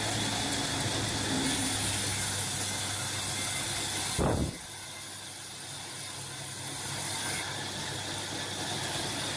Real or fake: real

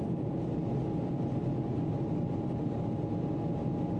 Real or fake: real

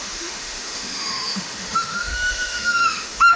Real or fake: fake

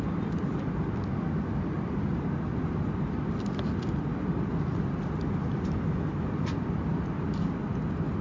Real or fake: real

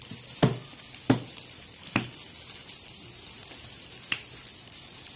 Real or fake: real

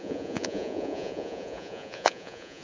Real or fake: fake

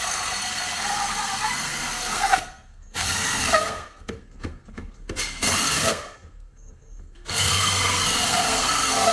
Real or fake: fake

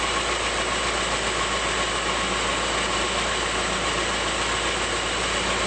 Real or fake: real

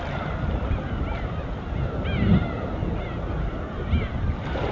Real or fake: fake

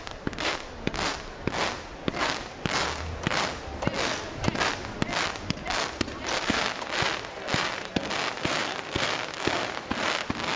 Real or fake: real